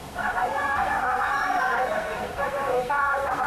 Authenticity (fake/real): fake